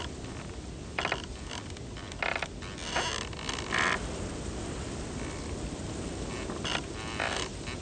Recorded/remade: recorded